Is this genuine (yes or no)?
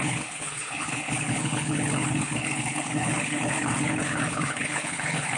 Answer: no